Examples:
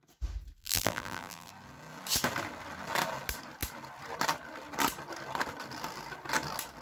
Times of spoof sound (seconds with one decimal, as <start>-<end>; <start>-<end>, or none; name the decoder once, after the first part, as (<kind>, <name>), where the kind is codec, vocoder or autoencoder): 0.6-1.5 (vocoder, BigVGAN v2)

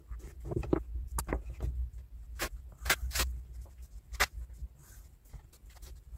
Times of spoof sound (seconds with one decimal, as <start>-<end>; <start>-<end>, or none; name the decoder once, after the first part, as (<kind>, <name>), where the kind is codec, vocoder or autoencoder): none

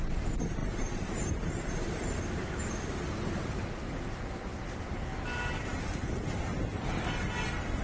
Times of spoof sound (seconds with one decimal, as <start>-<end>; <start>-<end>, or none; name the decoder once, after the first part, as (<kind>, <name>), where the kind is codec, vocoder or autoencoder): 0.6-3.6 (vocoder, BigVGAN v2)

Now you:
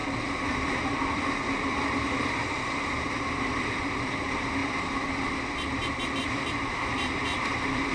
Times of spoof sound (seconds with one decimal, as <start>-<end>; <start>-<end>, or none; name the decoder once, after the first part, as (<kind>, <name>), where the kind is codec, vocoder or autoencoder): 1.9-4.6 (vocoder, BigVGAN v2); 6.5-7.9

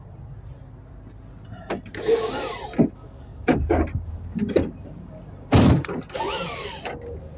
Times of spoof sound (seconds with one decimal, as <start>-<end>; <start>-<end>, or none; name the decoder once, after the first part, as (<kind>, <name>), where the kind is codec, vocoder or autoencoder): 3.3-5.7 (vocoder, BigVGAN v2)